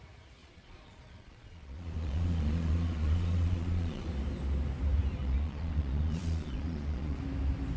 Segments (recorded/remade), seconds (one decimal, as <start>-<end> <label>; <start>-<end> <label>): 0.0-0.4 recorded; 0.4-4.1 remade; 4.1-5.2 recorded; 5.2-7.2 remade; 7.2-7.8 recorded